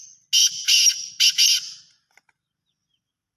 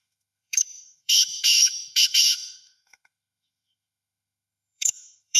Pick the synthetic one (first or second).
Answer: second